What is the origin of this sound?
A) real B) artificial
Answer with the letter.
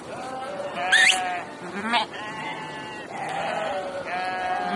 A